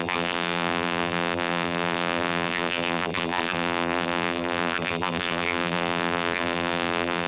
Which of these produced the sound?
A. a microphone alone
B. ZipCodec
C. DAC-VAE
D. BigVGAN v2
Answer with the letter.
D